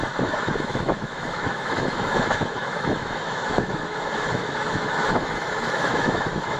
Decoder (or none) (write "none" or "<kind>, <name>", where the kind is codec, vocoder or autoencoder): autoencoder, DAC-VAE